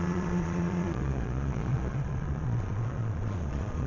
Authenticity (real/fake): fake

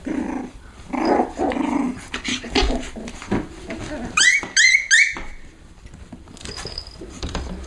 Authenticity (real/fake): real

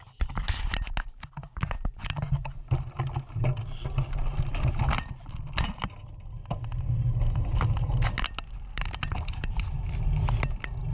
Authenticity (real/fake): real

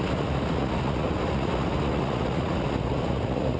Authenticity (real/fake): fake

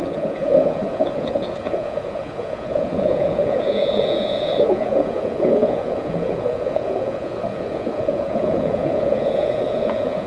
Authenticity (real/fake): fake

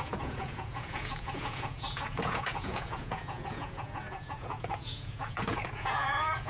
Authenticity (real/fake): fake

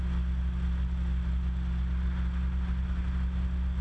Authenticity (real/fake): real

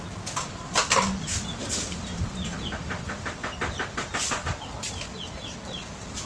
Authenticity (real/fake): real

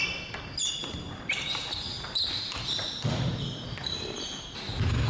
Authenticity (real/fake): real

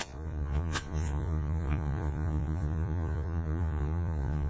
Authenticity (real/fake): fake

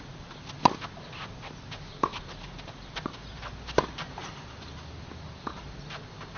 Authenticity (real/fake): real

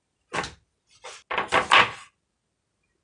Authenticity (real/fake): real